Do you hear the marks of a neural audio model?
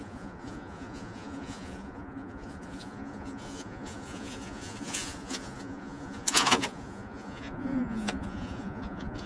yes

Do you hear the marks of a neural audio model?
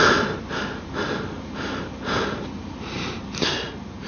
no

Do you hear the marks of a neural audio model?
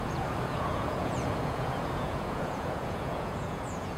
yes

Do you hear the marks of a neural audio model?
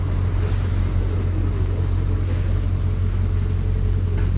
no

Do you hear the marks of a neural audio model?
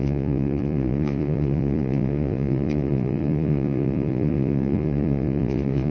yes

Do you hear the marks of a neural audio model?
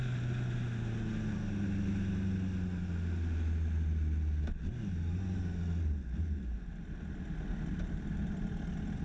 no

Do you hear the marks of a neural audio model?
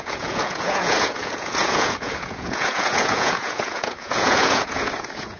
yes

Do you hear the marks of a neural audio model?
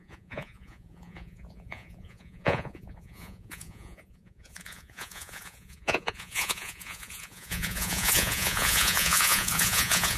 yes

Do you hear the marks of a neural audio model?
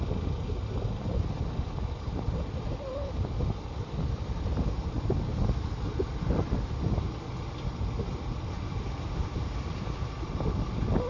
no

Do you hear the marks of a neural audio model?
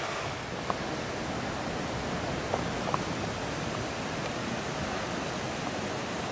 no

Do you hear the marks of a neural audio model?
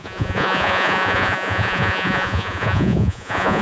yes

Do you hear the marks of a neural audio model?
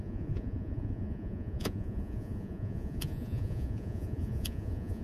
yes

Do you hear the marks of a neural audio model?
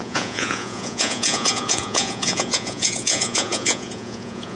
yes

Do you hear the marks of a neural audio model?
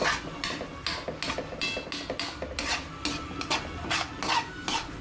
no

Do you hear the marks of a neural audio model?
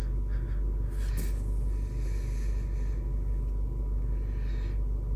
no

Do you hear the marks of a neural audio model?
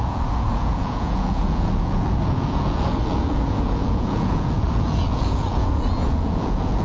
yes